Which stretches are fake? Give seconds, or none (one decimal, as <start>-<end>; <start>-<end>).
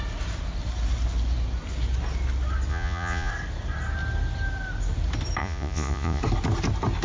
2.7-3.3; 5.4-6.2